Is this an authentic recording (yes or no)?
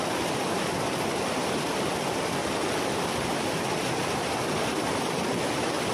no